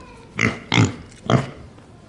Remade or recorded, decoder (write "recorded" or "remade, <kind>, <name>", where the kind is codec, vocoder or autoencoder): recorded